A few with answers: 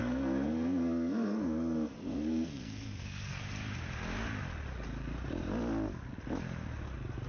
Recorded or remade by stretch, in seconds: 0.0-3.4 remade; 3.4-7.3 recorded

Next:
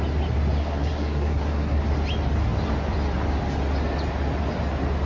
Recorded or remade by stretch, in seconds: 0.0-0.6 recorded; 0.6-1.8 remade; 1.8-5.1 recorded

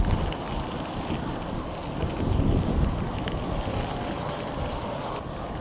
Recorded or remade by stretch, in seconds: 0.0-5.6 recorded

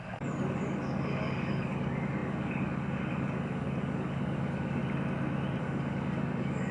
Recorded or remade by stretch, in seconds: 0.0-4.8 remade; 4.8-5.6 recorded; 5.6-6.7 remade

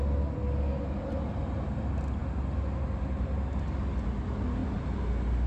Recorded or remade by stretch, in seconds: 0.0-4.6 recorded; 4.6-5.5 remade

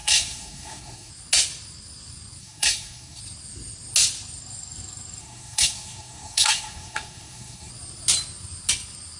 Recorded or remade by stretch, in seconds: 0.0-1.1 remade; 1.1-2.4 recorded; 2.4-3.2 remade; 3.2-5.2 recorded; 5.2-7.7 remade; 7.7-9.2 recorded